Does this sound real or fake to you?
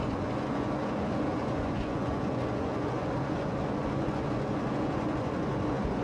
fake